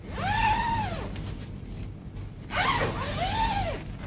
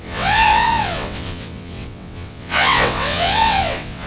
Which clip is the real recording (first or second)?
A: first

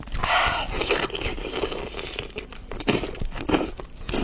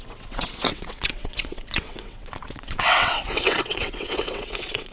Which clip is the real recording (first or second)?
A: first